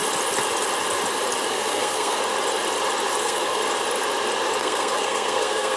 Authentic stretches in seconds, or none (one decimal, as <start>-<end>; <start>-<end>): 0.0-1.5; 2.2-3.2; 3.6-4.6